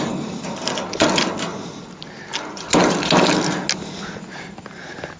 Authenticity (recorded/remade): recorded